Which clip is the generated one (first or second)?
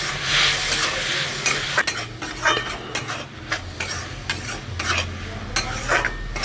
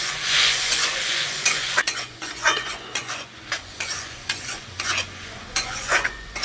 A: second